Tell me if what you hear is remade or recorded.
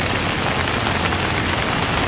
recorded